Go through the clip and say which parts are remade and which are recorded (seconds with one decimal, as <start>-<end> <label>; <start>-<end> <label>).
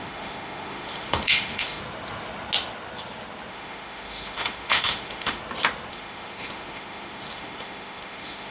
0.0-1.8 remade; 1.8-3.5 recorded; 3.5-5.4 remade; 5.4-5.9 recorded; 5.9-8.5 remade